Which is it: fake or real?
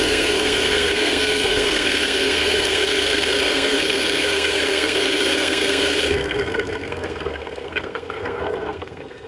fake